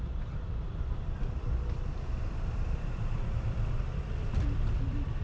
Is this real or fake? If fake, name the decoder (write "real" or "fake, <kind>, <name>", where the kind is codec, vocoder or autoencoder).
fake, vocoder, BigVGAN v2